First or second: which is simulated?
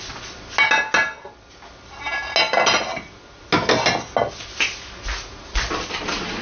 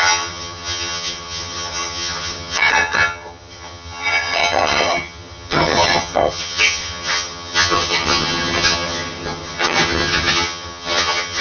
second